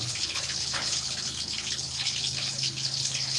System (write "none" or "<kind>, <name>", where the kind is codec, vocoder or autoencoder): codec, HILCodec